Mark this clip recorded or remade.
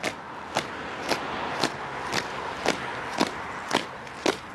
recorded